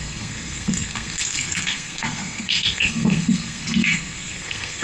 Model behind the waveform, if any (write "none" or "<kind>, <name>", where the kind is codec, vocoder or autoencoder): codec, SNAC